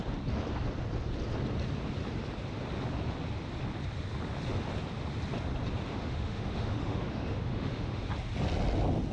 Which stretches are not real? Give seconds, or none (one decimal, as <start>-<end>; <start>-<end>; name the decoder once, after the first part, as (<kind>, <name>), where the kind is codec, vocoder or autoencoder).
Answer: 5.9-8.0 (autoencoder, DAC-VAE)